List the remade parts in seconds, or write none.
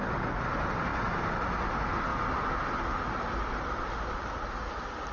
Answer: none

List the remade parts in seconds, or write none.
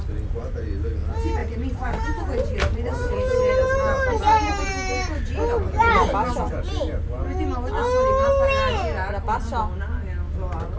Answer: 1.4-4.5 (vocoder, BigVGAN v2)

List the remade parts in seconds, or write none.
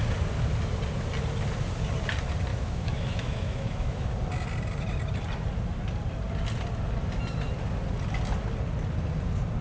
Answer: 2.5-4.1 (autoencoder, DAC-VAE)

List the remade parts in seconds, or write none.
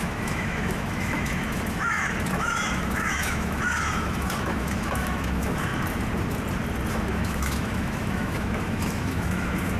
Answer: 0.0-5.7 (autoencoder, DAC-VAE); 6.9-9.8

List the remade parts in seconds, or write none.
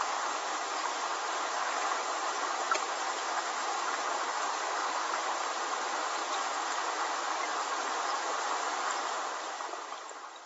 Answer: 0.5-2.9 (vocoder, BigVGAN v2); 3.4-5.3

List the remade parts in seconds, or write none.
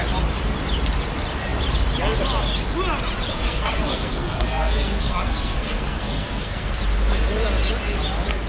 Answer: 3.3-6.8 (codec, SNAC)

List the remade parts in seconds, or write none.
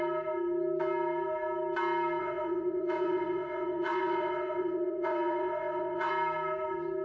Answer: 2.2-6.1 (vocoder, WaveNeXt)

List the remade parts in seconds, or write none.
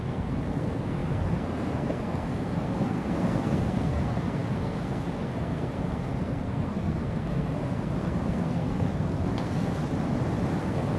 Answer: 0.0-9.8 (codec, SNAC); 10.6-11.0